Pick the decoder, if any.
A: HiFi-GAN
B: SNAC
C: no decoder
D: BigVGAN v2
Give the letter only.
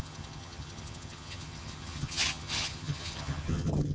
A